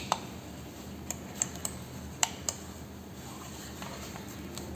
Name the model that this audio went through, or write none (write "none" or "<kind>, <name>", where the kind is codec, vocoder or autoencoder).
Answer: none